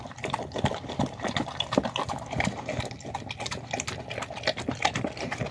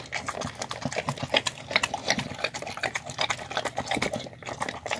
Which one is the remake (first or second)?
first